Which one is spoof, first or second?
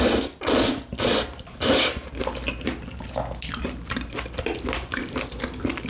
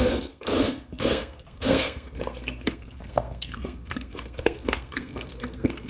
second